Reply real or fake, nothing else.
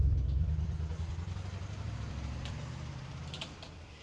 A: fake